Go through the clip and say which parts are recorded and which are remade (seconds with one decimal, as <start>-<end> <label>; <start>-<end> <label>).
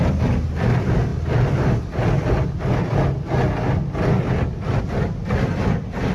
0.0-6.1 recorded